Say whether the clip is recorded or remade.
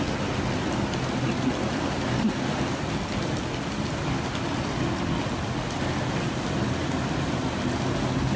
recorded